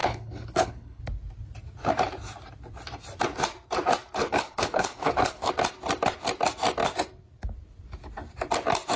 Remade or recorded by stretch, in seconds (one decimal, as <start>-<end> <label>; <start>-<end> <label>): 0.0-1.0 remade; 1.0-4.2 recorded; 4.2-5.5 remade; 5.5-9.0 recorded